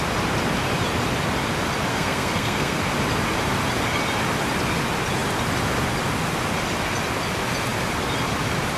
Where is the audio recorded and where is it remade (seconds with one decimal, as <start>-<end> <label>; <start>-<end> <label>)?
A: 0.0-1.9 recorded; 1.9-2.8 remade; 2.8-8.8 recorded